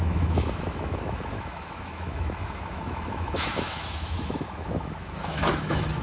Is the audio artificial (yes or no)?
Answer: yes